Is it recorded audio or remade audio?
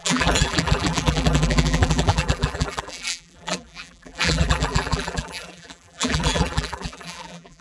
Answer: remade